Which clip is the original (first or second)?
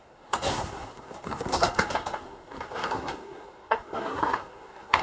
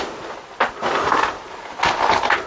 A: second